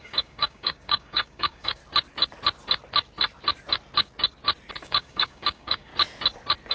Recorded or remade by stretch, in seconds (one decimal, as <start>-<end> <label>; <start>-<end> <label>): 0.0-1.8 remade; 1.8-4.8 recorded; 4.8-5.9 remade; 5.9-6.7 recorded